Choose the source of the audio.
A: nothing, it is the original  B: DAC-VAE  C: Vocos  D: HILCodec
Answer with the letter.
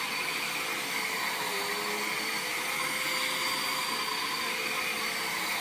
A